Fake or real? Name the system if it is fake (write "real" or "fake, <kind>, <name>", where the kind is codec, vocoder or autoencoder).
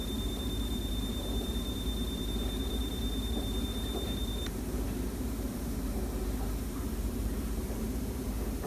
fake, vocoder, BigVGAN v2